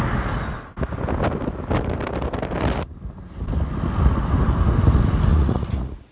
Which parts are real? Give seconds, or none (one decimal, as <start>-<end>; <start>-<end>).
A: 0.0-5.3